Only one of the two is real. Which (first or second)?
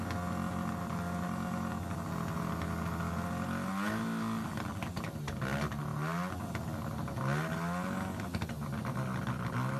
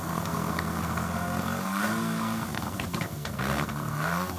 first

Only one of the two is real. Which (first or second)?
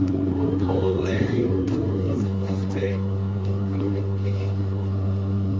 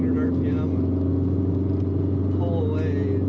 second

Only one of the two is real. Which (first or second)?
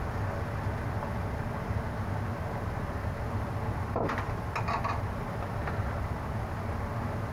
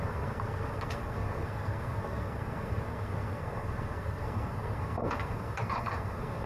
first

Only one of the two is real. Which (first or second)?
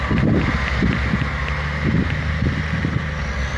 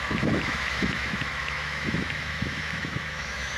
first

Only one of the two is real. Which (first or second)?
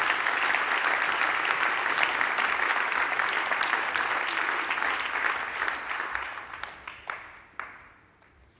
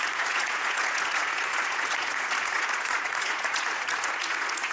first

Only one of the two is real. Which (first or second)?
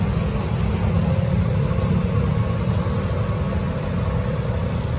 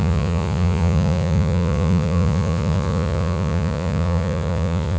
first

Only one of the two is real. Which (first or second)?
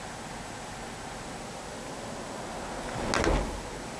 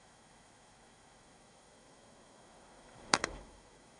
first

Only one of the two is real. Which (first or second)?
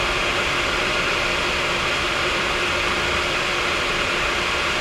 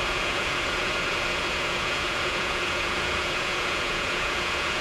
first